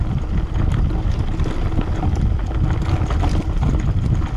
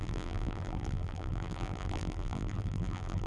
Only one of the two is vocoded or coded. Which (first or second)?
second